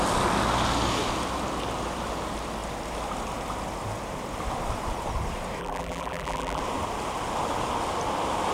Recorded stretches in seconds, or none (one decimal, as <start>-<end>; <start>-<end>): 0.0-5.6; 6.6-8.5